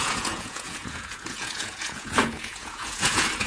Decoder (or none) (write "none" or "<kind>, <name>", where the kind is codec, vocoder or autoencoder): vocoder, Vocos